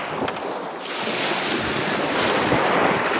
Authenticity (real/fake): real